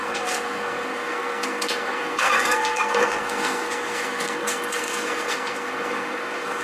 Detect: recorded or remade remade